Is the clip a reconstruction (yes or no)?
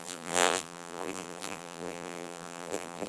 yes